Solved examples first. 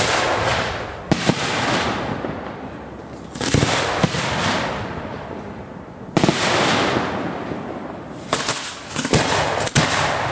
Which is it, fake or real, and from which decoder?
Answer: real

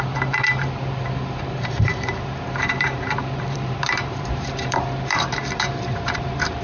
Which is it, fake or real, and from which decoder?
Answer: fake, vocoder, BigVGAN v2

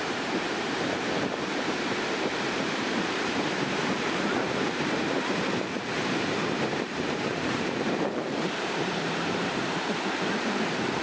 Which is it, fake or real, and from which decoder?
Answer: fake, vocoder, BigVGAN v2